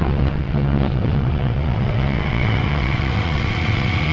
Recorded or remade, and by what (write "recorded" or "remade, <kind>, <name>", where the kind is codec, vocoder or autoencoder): remade, vocoder, WaveNeXt